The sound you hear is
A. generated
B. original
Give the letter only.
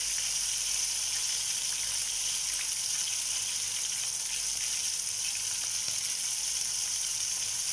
B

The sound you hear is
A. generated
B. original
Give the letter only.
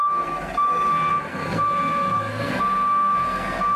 A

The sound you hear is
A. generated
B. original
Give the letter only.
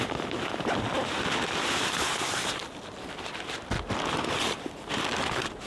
B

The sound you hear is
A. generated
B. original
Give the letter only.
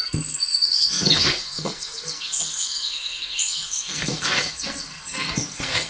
A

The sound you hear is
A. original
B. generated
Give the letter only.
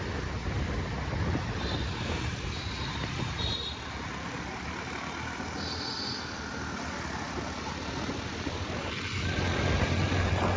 A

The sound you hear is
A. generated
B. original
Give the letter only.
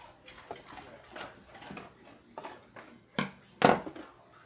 B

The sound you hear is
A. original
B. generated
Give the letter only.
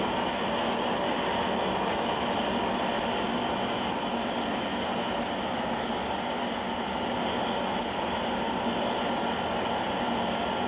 A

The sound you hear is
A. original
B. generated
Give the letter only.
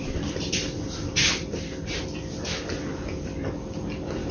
A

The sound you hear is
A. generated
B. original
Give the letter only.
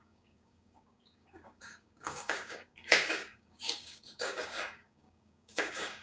A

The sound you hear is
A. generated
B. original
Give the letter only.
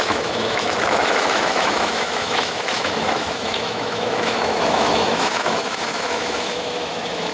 A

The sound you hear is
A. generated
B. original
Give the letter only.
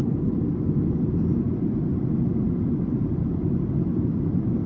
A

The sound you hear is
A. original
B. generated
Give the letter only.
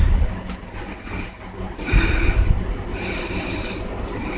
A